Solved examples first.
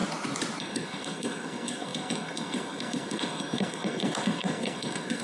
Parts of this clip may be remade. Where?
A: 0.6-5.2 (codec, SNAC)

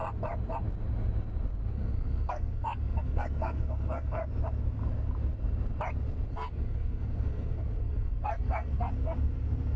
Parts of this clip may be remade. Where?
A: 1.7-4.2 (codec, SNAC); 6.3-9.8

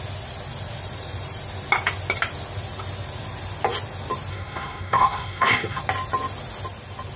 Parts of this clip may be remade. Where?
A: 4.3-5.8 (codec, SNAC)

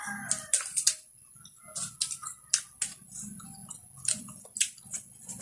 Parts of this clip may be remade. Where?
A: none

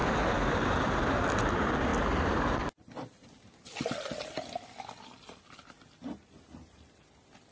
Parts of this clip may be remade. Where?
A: none

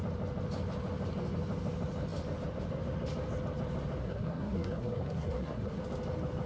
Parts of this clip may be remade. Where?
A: 4.0-5.8 (codec, SNAC)